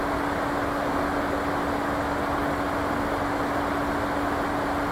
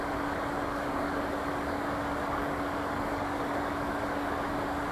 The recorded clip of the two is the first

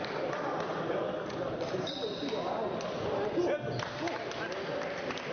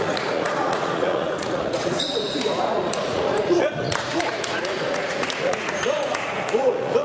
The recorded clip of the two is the first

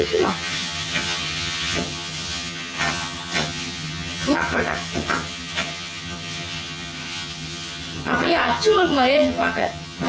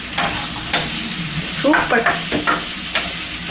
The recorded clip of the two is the second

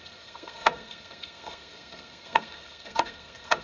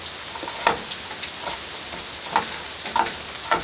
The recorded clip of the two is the second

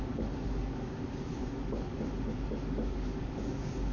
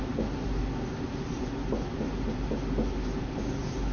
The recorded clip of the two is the second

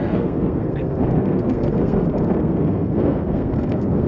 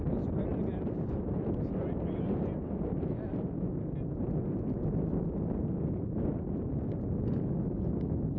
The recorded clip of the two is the second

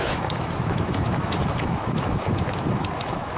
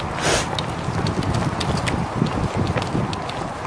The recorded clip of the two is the second